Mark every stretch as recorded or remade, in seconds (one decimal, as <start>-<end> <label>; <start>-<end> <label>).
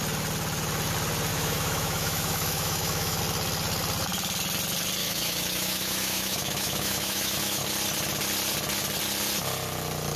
0.0-1.3 recorded; 1.3-3.2 remade; 3.2-5.0 recorded; 5.0-7.6 remade; 7.6-10.2 recorded